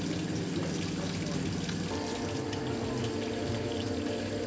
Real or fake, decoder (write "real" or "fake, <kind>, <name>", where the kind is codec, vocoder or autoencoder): real